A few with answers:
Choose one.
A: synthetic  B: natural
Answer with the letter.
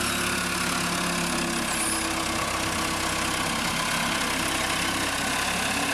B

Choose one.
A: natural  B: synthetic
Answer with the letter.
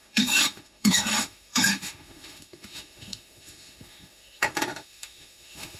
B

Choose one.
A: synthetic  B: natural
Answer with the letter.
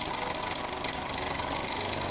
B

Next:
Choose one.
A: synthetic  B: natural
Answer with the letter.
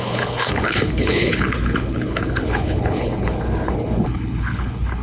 A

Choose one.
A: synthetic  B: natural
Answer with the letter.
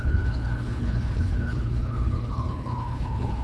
A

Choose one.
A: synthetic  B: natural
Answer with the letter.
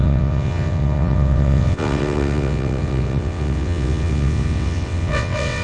A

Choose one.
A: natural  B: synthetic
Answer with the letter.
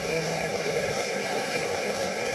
B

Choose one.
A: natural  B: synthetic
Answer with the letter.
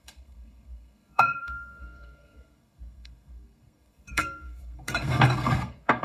B